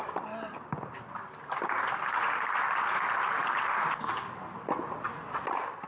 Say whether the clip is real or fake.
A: real